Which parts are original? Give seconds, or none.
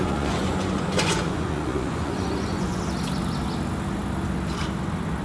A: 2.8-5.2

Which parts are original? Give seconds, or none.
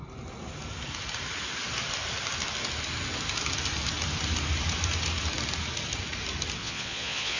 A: 0.0-6.6